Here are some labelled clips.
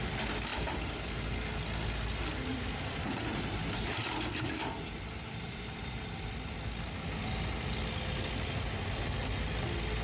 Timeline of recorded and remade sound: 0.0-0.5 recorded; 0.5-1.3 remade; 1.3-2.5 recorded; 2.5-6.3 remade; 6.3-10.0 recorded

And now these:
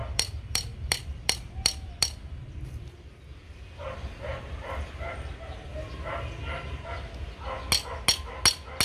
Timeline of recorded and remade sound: 0.0-4.8 remade; 4.8-8.8 recorded

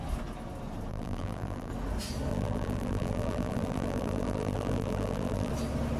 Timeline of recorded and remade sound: 0.0-0.9 recorded; 0.9-1.7 remade; 1.7-2.3 recorded; 2.3-5.5 remade; 5.5-6.0 recorded

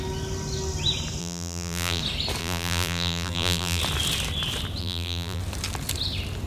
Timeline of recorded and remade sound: 0.0-1.2 recorded; 1.2-2.0 remade; 2.0-2.4 recorded; 2.4-3.8 remade; 3.8-4.8 recorded; 4.8-5.4 remade; 5.4-6.5 recorded

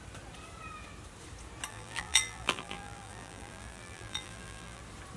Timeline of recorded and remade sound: 0.0-1.7 recorded; 1.7-4.8 remade; 4.8-5.2 recorded

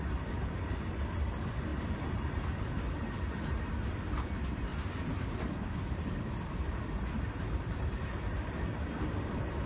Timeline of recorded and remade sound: 0.0-1.7 recorded; 1.7-2.3 remade; 2.3-4.7 recorded; 4.7-9.0 remade; 9.0-9.7 recorded

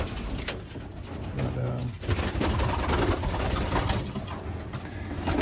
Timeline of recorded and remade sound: 0.0-5.4 recorded

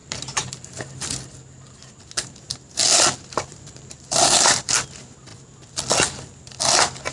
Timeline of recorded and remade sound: 0.0-0.8 remade; 0.8-3.5 recorded; 3.5-4.7 remade; 4.7-7.1 recorded